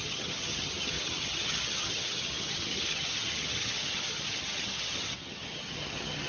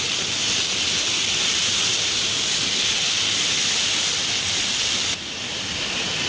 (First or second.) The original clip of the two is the second